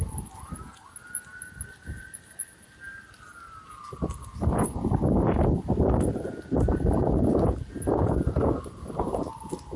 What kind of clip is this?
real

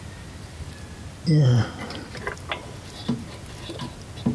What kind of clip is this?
real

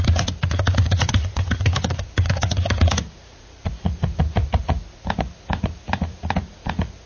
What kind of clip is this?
fake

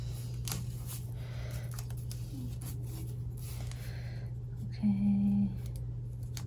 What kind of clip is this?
real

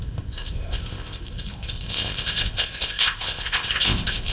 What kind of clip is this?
fake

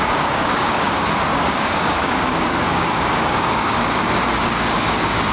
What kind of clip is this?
fake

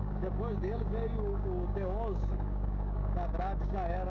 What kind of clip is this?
fake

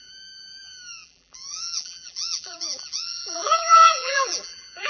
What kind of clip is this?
fake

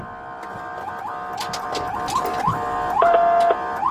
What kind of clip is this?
real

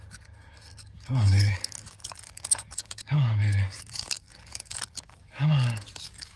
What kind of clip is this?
fake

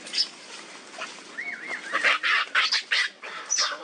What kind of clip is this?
real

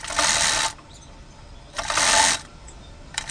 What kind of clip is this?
fake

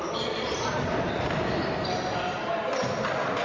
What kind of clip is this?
real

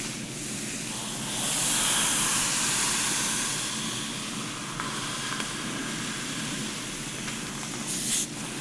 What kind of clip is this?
real